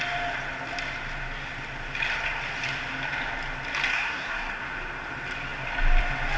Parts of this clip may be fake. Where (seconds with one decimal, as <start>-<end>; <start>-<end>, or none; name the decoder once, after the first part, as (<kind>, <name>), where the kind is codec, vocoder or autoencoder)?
3.9-4.6 (codec, SNAC)